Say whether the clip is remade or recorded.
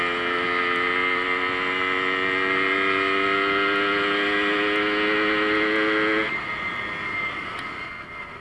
recorded